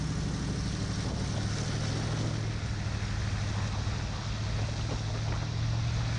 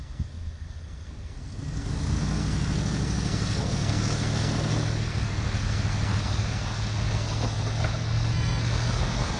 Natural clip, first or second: first